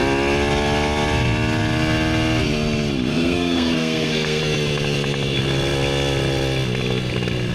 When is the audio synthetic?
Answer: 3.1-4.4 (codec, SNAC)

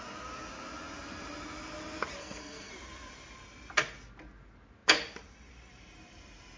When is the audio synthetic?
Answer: 2.2-2.7 (codec, SNAC)